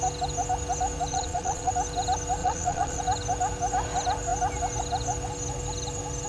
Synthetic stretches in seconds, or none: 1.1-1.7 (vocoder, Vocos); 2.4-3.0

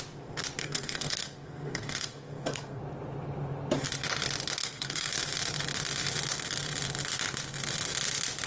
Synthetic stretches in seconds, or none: 0.6-2.8 (codec, SNAC); 4.6-5.1

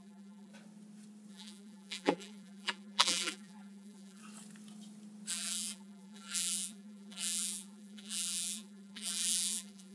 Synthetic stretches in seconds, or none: 0.0-0.5 (vocoder, BigVGAN v2); 1.3-4.2; 5.3-9.9

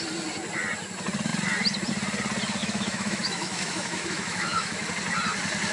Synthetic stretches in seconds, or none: 2.6-4.9 (autoencoder, DAC-VAE)

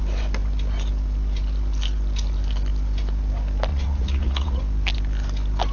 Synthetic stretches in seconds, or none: 3.7-4.6 (vocoder, Vocos)

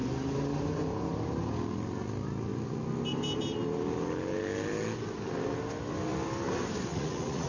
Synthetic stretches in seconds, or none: 6.9-7.5 (vocoder, Vocos)

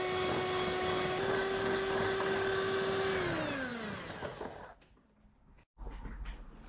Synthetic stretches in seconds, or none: none